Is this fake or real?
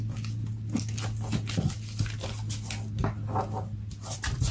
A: real